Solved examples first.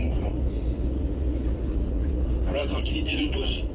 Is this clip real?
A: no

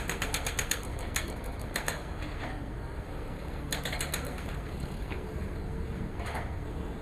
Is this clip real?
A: no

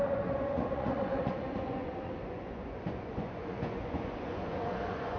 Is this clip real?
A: no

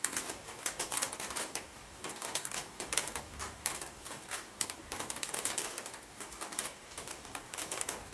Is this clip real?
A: no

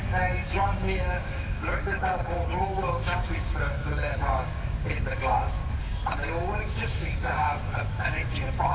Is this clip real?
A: no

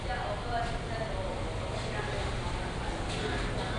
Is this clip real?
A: yes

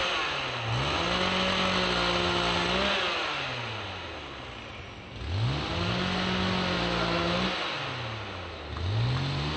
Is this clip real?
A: yes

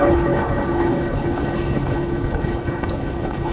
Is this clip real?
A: no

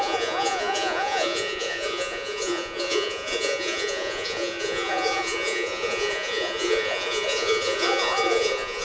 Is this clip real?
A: no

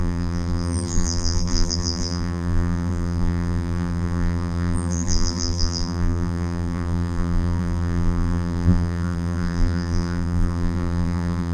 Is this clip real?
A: no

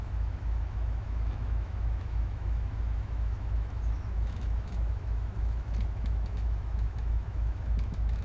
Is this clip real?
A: no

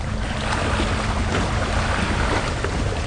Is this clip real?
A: yes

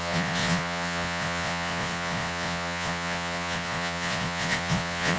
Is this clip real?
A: no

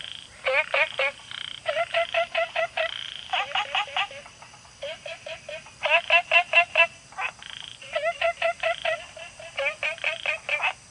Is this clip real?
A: yes